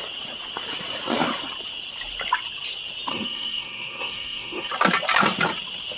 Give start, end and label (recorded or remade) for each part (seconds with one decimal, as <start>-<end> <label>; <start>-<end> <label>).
0.0-3.1 recorded; 3.1-4.7 remade; 4.7-6.0 recorded